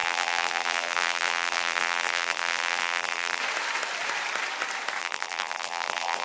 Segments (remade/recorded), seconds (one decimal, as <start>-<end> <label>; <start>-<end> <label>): 0.0-3.4 remade; 3.4-5.0 recorded; 5.0-6.2 remade